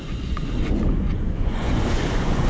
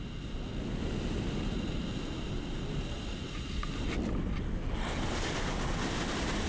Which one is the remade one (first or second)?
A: first